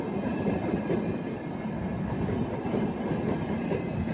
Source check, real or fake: real